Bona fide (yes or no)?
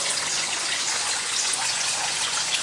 no